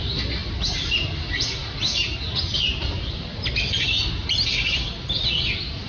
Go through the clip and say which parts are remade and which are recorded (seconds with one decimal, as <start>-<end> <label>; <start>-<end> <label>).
0.0-5.9 recorded